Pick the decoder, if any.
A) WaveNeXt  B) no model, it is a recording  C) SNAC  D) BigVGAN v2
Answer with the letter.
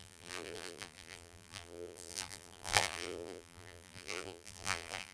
D